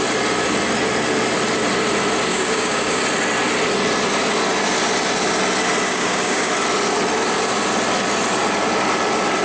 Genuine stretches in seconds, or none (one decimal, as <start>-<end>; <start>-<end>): 0.0-2.3; 3.0-5.9; 6.5-9.4

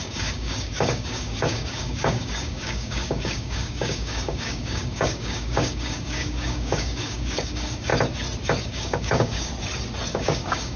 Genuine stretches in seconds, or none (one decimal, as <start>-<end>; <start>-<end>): 7.9-8.6; 9.5-10.1

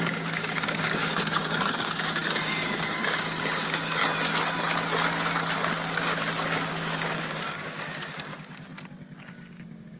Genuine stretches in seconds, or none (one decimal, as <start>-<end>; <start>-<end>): 4.0-6.7; 8.7-9.3